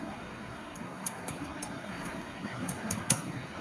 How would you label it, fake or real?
fake